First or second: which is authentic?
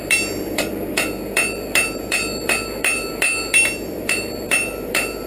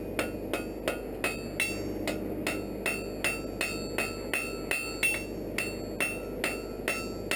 second